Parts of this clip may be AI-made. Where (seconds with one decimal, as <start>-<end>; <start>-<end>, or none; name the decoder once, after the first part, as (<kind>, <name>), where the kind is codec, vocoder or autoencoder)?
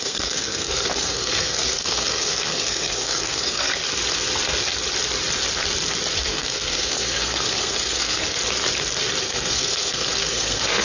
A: 0.0-3.8 (codec, SNAC); 6.2-8.4; 9.2-10.8